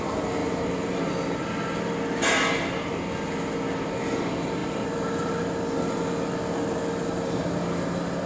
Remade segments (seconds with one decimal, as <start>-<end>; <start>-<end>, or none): 0.4-1.0; 4.6-5.4